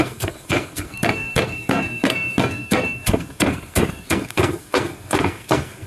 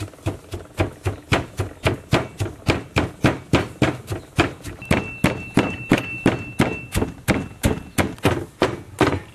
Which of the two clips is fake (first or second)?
first